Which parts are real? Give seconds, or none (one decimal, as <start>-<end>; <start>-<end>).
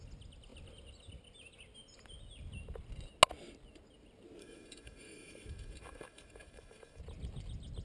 0.0-4.4; 7.0-7.8